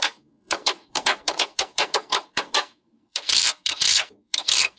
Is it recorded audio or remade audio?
remade